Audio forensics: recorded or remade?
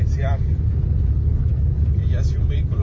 recorded